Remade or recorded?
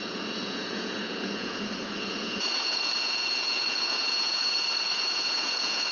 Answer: remade